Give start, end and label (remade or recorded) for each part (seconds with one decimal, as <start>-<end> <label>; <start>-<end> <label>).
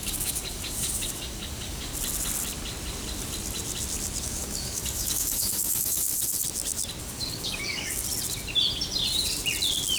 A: 0.0-1.9 remade; 1.9-4.2 recorded; 4.2-6.1 remade; 6.1-7.0 recorded; 7.0-8.0 remade; 8.0-10.0 recorded